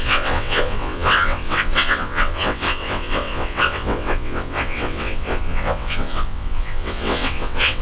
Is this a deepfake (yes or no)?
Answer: yes